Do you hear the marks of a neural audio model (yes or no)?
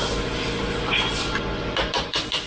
no